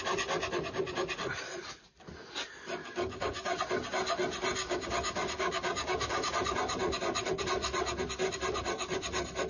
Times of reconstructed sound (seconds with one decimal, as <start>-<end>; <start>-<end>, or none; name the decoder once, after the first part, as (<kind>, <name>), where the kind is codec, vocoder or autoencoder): 2.8-3.6 (codec, DAC); 4.6-6.3